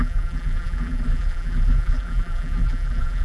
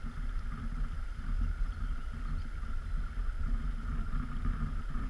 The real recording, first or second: second